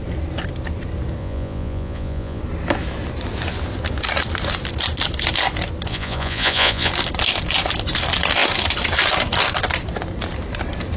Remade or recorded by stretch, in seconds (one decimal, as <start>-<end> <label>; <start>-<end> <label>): 0.0-1.2 recorded; 1.2-2.4 remade; 2.4-5.9 recorded; 5.9-6.9 remade; 6.9-11.0 recorded